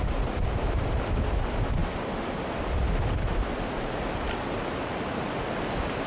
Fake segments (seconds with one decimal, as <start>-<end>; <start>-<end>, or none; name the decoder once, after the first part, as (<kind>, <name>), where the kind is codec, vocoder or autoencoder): none